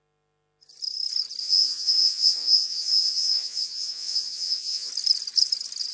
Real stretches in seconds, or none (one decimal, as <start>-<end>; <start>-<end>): 0.0-1.4; 4.9-5.9